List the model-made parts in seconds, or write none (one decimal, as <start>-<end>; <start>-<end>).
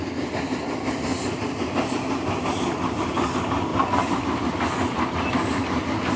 none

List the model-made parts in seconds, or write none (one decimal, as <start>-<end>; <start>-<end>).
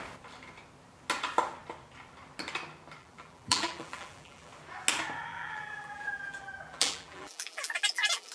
3.0-4.5; 5.3-8.3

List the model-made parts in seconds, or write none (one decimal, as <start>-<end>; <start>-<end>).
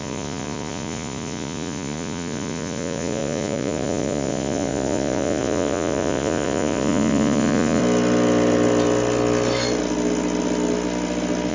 0.0-7.8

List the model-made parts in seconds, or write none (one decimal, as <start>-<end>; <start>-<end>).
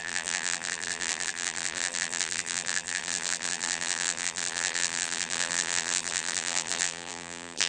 0.0-7.7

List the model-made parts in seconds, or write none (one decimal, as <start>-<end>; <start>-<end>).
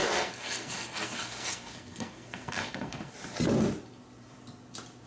0.0-3.1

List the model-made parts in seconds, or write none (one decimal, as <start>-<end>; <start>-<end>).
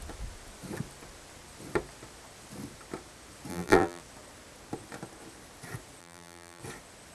3.5-4.0; 6.0-6.6